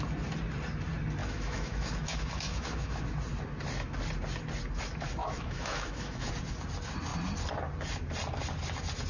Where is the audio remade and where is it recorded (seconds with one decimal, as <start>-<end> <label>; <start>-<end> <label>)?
0.0-1.2 recorded; 1.2-3.0 remade; 3.0-5.2 recorded; 5.2-6.3 remade; 6.3-9.1 recorded